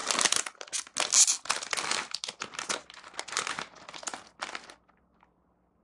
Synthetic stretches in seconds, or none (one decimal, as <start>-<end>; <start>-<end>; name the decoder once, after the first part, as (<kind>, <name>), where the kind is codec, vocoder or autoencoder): none